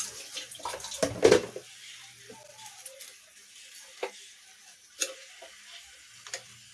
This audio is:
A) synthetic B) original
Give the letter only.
B